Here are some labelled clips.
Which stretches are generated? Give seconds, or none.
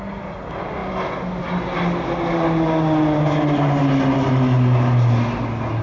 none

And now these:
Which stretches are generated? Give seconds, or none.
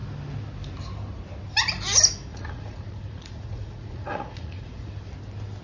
2.3-4.9 (vocoder, Vocos)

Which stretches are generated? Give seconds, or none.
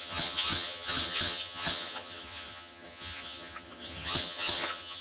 0.0-5.0 (vocoder, HiFi-GAN)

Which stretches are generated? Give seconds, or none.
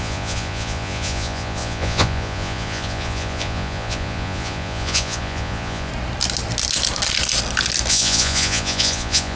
0.0-5.9 (vocoder, Vocos); 7.9-9.4